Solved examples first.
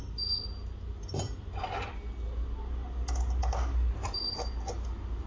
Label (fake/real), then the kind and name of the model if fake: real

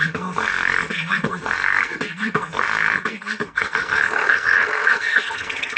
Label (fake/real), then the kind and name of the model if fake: fake, codec, SNAC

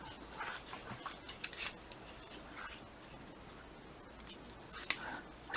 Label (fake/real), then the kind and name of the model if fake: real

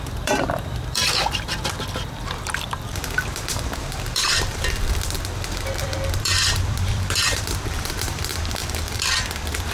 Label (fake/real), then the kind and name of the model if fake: fake, vocoder, BigVGAN v2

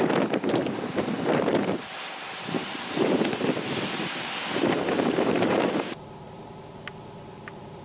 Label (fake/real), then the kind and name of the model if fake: fake, vocoder, BigVGAN v2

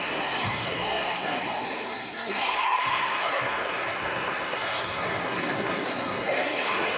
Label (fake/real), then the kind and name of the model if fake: fake, codec, SNAC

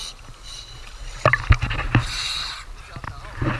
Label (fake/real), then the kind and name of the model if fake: real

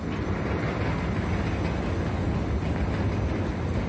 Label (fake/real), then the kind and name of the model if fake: real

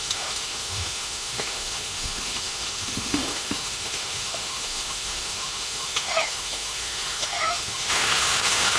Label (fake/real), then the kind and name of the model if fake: fake, autoencoder, DAC-VAE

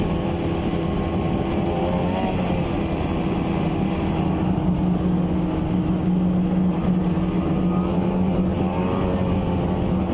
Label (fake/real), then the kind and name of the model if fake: real